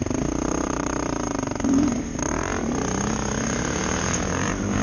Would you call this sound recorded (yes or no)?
no